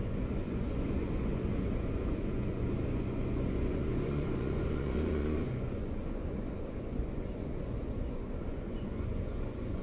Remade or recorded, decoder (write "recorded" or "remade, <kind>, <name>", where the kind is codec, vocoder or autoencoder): remade, vocoder, Vocos